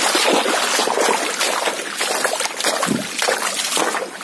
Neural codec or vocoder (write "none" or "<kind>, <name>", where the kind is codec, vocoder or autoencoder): none